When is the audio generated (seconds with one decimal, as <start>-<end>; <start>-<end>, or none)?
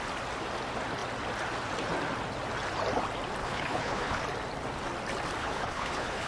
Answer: 3.4-4.2; 5.4-6.3